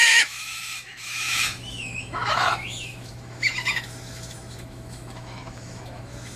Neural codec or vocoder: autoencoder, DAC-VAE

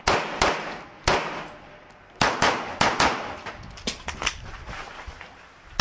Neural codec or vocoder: none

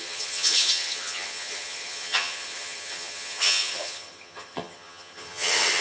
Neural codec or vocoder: vocoder, HiFi-GAN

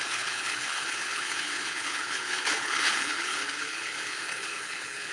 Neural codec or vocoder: codec, HILCodec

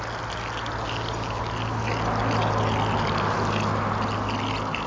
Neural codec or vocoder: none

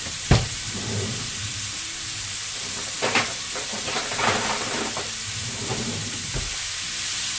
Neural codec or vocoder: vocoder, BigVGAN v2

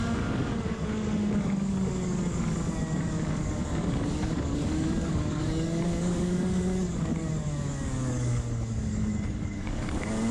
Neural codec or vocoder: codec, DAC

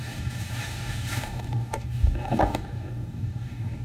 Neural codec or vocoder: codec, DAC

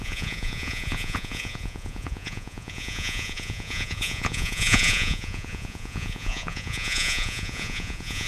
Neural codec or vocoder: vocoder, Vocos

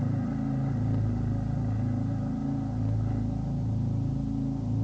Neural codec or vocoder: none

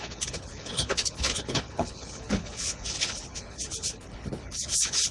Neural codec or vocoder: codec, HILCodec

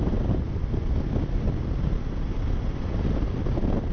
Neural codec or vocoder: none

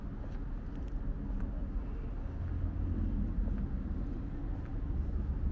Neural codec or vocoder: none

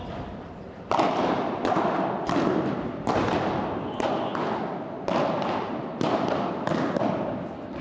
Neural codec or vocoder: none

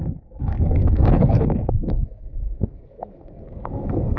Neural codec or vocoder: codec, SNAC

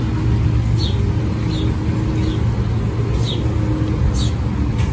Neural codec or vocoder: none